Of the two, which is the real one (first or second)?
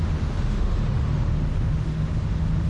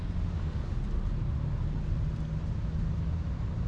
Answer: second